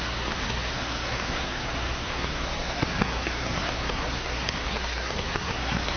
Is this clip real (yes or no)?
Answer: no